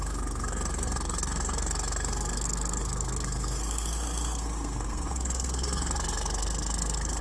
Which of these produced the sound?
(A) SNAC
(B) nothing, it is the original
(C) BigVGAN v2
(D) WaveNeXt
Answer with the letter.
A